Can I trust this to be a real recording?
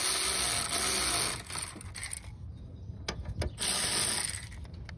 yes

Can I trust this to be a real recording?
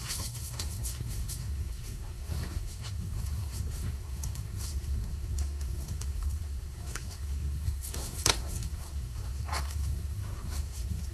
no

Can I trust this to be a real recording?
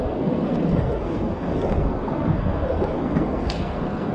no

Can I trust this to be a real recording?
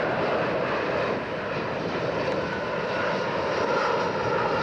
yes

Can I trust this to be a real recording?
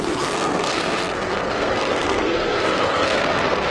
no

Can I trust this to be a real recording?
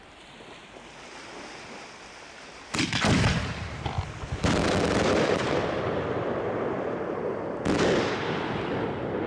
yes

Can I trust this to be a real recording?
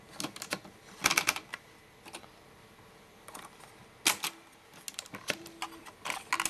yes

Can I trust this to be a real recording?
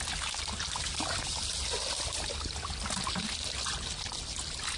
yes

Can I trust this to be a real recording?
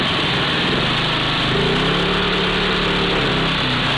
yes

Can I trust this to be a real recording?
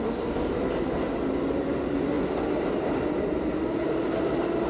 yes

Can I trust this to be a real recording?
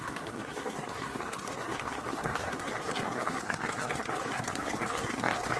no